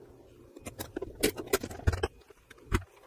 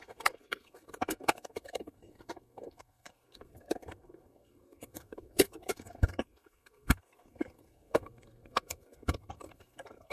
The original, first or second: first